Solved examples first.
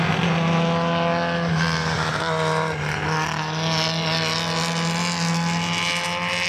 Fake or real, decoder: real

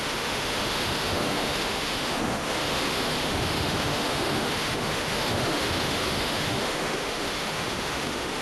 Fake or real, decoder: fake, autoencoder, DAC-VAE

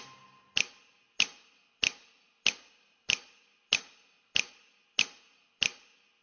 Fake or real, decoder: real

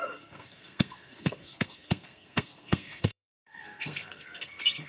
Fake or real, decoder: fake, codec, SNAC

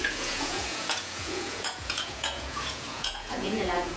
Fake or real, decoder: fake, vocoder, Vocos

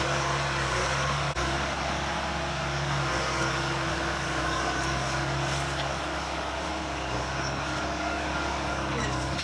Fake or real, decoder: fake, codec, DAC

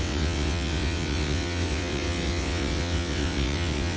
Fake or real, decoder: fake, vocoder, WaveNeXt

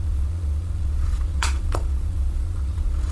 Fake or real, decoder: fake, vocoder, Vocos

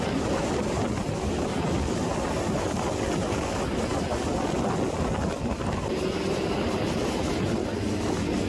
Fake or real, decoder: real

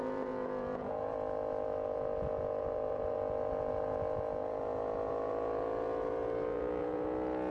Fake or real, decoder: fake, vocoder, Vocos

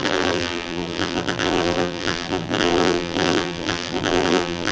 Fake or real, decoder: fake, vocoder, BigVGAN v2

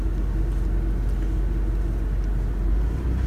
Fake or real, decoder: real